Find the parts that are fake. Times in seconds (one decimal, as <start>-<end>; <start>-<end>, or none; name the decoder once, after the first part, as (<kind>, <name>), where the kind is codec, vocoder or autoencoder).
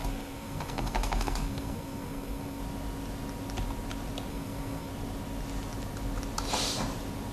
0.0-2.6 (codec, SNAC); 4.3-4.9